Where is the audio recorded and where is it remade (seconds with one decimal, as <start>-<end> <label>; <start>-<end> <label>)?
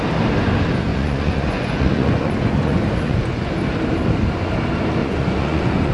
0.0-0.9 recorded; 0.9-3.5 remade; 3.5-5.0 recorded; 5.0-5.9 remade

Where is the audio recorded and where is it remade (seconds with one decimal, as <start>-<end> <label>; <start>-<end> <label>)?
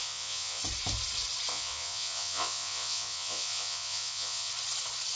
0.0-0.6 remade; 0.6-1.5 recorded; 1.5-4.5 remade; 4.5-5.2 recorded